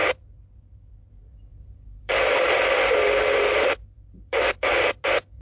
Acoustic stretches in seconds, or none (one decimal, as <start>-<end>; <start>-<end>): 0.0-1.5; 4.7-5.4